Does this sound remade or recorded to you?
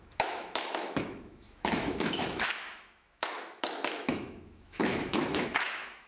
remade